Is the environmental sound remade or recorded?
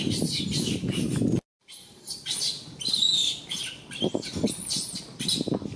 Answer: remade